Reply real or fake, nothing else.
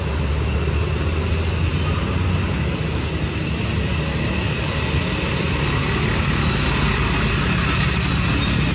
real